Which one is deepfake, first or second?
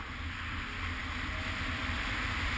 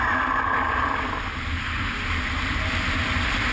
second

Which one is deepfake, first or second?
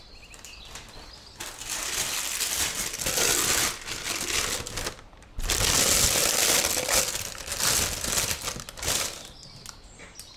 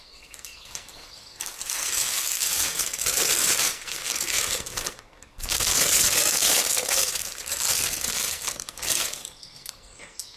second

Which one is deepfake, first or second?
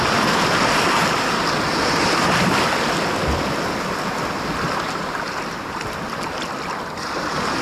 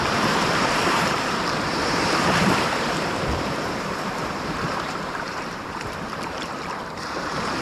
second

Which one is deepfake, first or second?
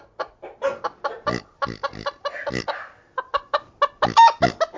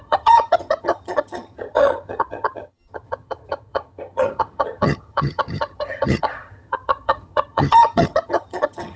second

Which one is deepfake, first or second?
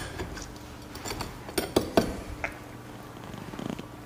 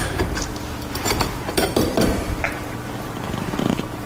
second